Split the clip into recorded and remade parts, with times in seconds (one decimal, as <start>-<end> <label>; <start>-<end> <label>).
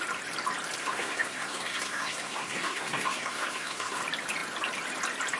0.0-0.8 recorded; 0.8-4.0 remade; 4.0-5.4 recorded